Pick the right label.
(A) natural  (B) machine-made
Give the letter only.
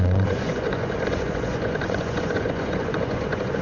B